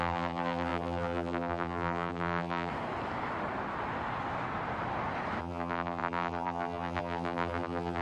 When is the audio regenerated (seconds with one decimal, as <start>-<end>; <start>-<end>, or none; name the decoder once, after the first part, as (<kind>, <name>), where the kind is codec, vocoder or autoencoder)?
0.0-2.7 (vocoder, BigVGAN v2); 5.4-8.0